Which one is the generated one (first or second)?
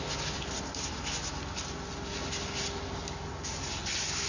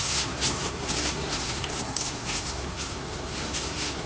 second